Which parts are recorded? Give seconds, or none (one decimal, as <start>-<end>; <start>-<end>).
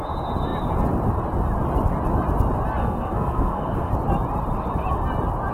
0.0-2.8; 3.9-5.5